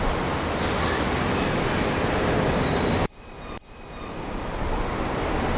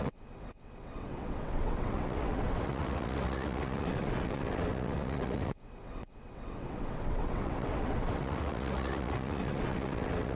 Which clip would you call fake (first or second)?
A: second